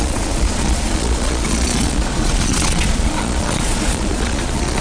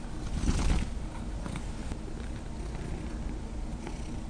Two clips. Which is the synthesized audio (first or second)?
first